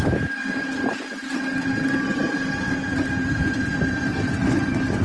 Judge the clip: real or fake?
real